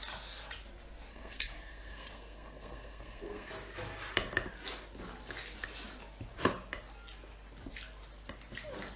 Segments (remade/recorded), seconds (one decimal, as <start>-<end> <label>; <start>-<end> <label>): 0.0-1.1 recorded; 1.1-3.5 remade; 3.5-9.0 recorded